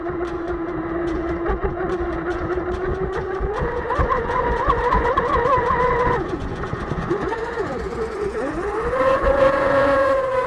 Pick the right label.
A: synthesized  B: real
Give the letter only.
A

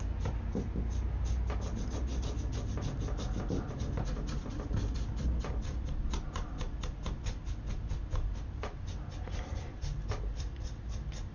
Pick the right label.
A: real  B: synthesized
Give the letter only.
A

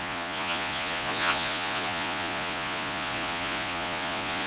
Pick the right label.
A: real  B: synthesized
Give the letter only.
B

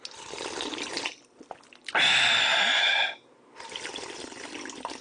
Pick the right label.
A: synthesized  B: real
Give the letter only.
B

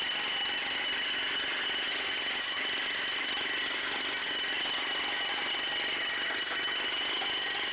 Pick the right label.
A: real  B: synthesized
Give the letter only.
A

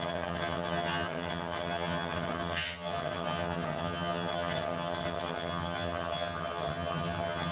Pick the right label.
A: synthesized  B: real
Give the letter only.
A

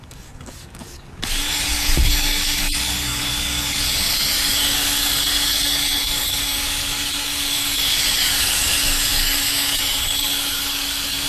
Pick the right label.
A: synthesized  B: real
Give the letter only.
A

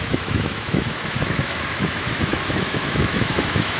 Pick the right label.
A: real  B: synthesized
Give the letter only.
B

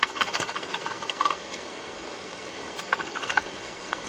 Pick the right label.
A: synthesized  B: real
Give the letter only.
A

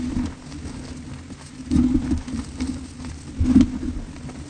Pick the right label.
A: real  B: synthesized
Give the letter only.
A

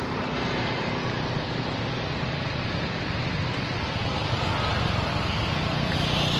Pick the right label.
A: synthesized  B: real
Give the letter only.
B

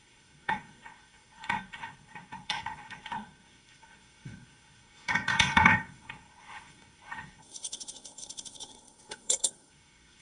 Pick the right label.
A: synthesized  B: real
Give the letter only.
A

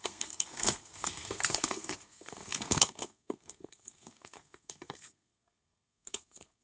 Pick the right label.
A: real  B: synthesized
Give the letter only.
B